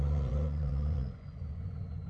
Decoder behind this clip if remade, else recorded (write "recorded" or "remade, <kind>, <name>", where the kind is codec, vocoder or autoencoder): remade, vocoder, Vocos